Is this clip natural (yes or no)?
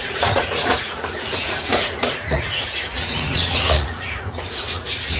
no